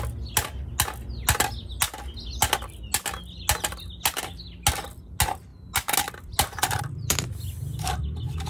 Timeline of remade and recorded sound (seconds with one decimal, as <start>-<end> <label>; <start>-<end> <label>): 0.0-8.5 recorded